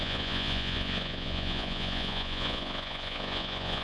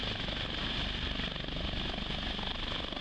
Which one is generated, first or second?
first